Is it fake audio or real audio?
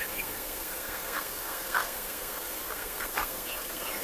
fake